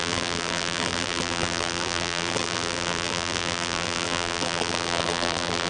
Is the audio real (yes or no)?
no